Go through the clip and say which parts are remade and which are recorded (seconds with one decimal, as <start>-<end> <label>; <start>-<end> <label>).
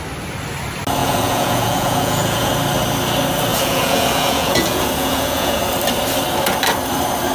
0.0-1.0 recorded; 1.0-2.5 remade; 2.5-3.5 recorded; 3.5-5.6 remade; 5.6-7.3 recorded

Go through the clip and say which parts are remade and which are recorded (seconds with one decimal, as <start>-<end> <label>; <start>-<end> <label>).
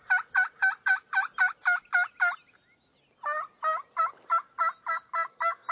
0.0-5.7 recorded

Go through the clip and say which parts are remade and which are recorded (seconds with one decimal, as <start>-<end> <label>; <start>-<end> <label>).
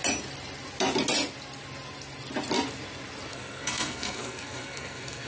0.0-3.3 recorded; 3.3-5.3 remade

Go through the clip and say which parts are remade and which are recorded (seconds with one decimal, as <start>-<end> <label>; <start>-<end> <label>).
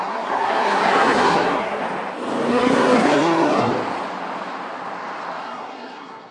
0.0-1.8 remade; 1.8-2.5 recorded; 2.5-3.7 remade; 3.7-5.4 recorded; 5.4-6.3 remade